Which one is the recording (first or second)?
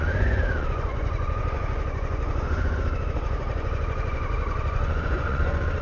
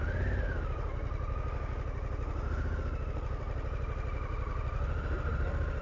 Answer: second